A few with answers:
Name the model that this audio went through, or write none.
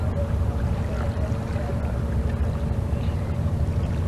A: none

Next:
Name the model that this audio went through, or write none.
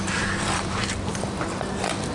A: vocoder, BigVGAN v2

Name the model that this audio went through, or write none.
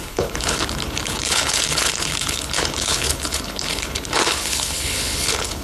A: codec, HILCodec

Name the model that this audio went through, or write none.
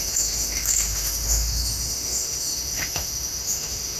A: autoencoder, DAC-VAE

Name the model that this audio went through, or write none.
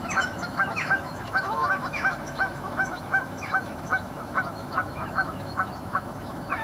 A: autoencoder, DAC-VAE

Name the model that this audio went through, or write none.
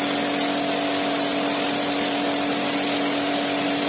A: none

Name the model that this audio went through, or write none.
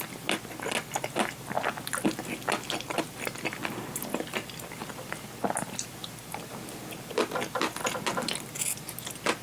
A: none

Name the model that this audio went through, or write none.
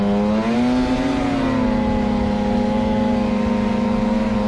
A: none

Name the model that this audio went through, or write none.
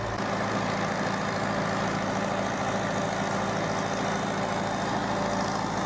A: none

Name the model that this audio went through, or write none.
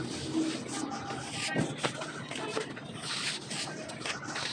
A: none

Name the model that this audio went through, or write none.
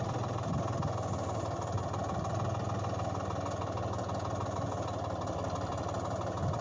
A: none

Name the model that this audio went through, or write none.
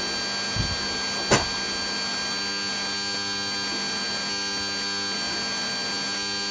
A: none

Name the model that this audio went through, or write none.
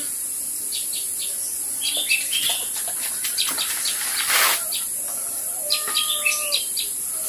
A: vocoder, BigVGAN v2